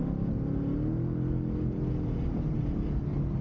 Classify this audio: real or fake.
real